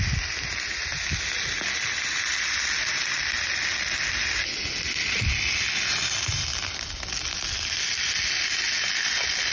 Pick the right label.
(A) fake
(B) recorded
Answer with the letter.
B